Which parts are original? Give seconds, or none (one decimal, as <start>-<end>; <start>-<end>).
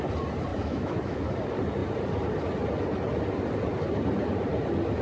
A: 0.0-0.5; 1.3-5.0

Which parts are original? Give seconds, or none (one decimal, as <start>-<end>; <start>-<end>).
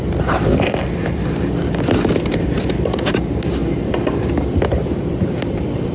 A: none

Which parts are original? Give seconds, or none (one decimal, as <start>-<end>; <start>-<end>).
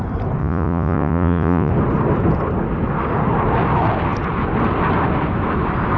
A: 0.0-0.4; 1.7-6.0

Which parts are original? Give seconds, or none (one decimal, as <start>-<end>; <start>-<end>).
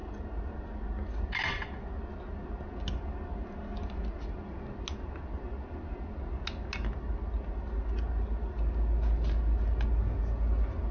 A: 0.0-10.9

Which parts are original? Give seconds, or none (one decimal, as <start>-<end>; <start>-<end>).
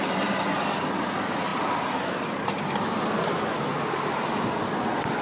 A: 0.0-1.5; 2.8-5.2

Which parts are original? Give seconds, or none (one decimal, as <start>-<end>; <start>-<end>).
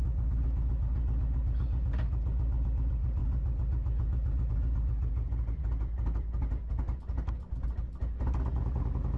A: 0.0-9.2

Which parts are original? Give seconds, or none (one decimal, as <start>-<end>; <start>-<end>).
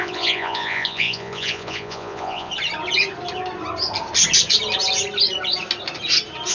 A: 2.5-6.5